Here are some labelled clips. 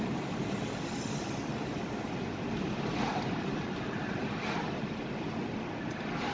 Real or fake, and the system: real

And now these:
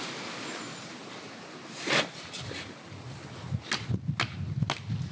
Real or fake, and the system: real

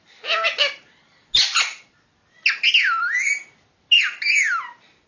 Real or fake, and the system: real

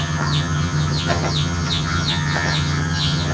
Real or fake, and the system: fake, vocoder, HiFi-GAN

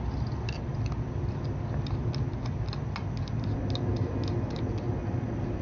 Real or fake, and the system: real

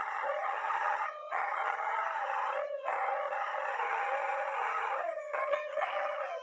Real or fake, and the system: fake, vocoder, HiFi-GAN